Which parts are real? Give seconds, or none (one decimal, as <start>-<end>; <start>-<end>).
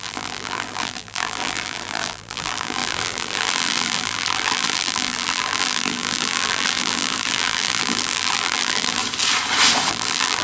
9.0-9.9